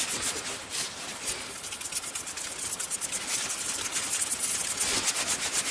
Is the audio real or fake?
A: real